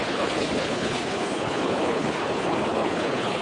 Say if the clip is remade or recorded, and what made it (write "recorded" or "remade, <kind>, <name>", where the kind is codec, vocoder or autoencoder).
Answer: remade, codec, HILCodec